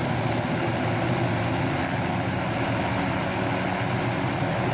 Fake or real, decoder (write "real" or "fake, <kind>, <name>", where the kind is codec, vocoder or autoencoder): real